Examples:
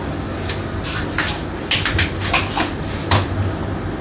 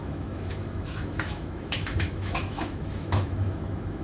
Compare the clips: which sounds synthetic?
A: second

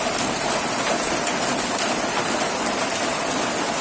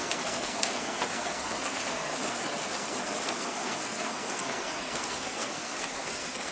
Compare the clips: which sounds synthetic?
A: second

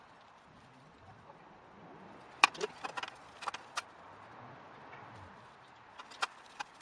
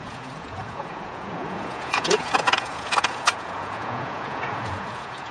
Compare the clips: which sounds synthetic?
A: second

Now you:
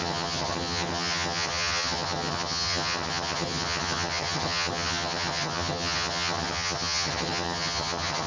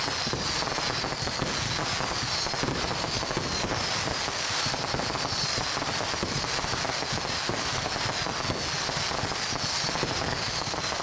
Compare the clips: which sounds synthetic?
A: first